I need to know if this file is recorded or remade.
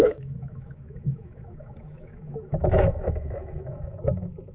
remade